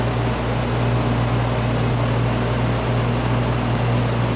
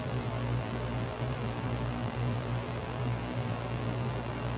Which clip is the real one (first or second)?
first